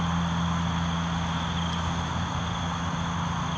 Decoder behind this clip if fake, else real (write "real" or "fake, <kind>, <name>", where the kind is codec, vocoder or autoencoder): real